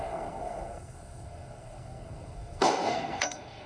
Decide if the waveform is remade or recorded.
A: remade